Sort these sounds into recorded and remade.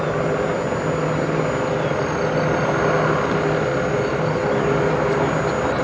recorded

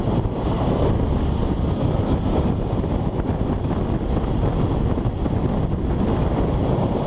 recorded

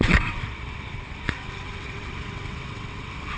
remade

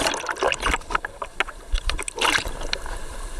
recorded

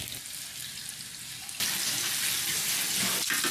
recorded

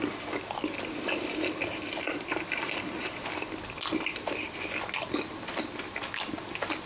recorded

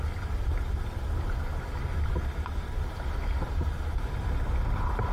recorded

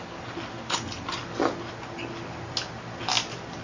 recorded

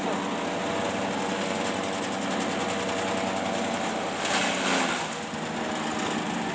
recorded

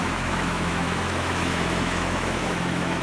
remade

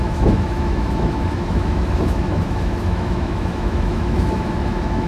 remade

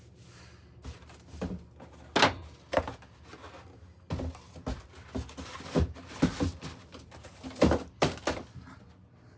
recorded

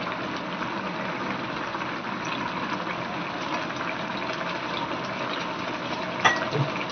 recorded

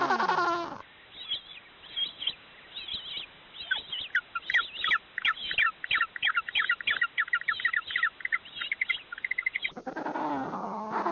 recorded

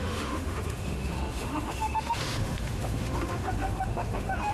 remade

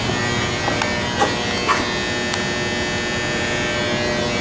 recorded